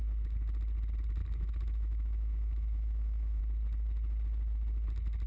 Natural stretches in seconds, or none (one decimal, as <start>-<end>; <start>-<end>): 0.0-1.2; 3.4-5.3